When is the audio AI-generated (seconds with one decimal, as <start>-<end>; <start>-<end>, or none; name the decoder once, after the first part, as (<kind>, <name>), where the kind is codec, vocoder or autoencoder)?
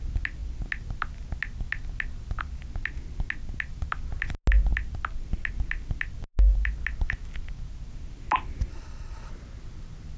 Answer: 8.7-9.3 (codec, HILCodec)